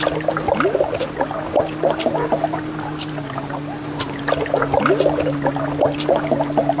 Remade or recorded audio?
recorded